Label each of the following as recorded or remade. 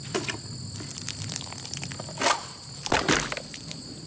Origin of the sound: recorded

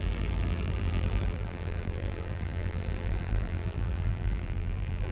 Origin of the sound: remade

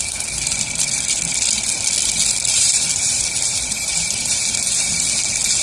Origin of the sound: recorded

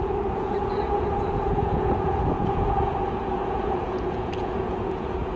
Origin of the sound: remade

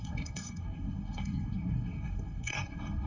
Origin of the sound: remade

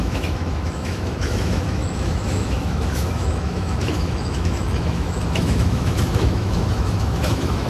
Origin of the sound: remade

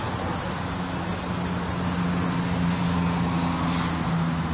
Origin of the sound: recorded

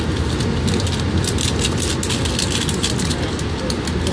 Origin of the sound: recorded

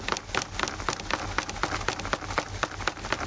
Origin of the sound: recorded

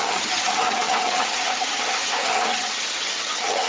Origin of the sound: remade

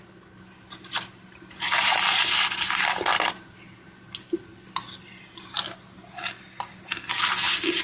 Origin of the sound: recorded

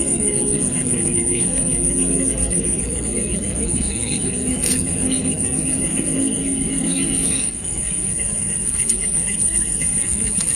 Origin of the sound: remade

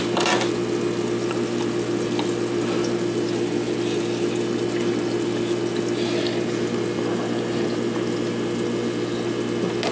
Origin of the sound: recorded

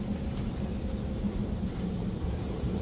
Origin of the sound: recorded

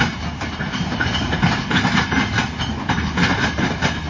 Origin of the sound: recorded